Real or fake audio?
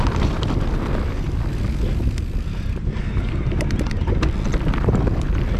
real